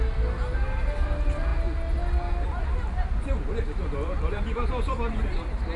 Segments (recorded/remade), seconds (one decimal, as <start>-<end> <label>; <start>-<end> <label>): 0.0-5.8 recorded

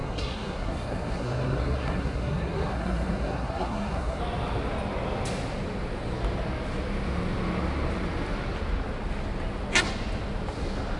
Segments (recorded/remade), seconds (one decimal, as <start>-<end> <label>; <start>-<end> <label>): 0.0-4.2 remade; 4.2-11.0 recorded